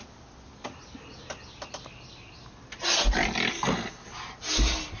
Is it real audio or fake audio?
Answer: real